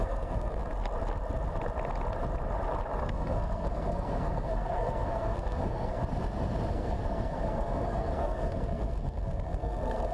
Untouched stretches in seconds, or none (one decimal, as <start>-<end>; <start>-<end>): 0.6-3.0; 6.0-6.7